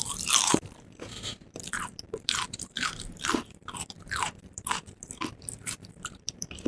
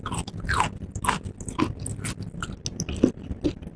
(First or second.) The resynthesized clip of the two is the first